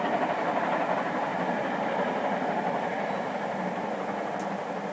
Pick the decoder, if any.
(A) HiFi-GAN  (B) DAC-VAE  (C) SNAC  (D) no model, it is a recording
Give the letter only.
D